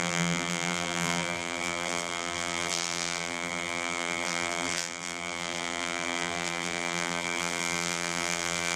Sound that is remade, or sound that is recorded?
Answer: remade